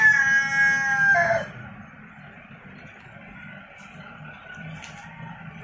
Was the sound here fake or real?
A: real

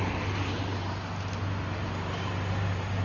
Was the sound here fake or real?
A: real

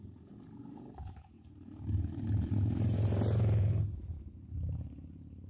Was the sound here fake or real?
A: fake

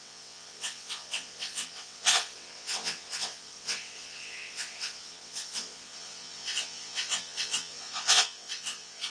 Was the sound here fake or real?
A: fake